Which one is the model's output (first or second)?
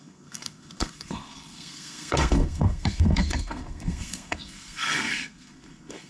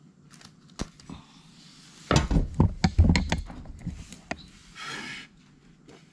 first